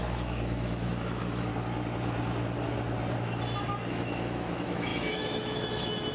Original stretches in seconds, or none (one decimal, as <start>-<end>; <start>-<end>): 1.5-3.9